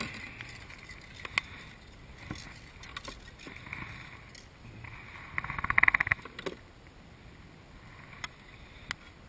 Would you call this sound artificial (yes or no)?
no